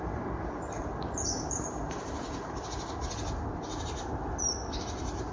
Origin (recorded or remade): recorded